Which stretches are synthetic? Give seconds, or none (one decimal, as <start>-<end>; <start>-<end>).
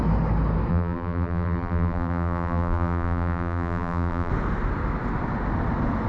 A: 0.7-4.3